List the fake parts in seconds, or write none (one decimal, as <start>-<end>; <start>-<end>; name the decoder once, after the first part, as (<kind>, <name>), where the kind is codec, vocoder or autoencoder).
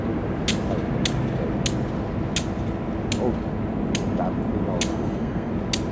4.9-5.5 (codec, SNAC)